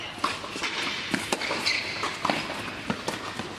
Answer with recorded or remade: recorded